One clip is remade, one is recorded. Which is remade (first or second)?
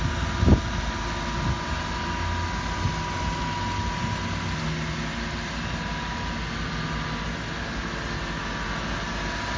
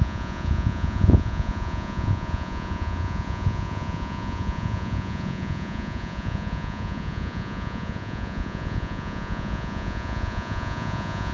second